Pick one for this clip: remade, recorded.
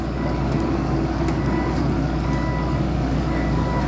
remade